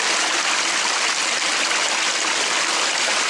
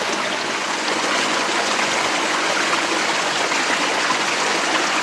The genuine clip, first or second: first